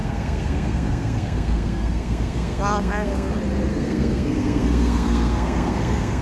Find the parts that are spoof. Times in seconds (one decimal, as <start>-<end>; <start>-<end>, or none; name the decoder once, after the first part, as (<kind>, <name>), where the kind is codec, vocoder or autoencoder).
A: 0.0-3.3 (codec, SNAC); 3.7-6.2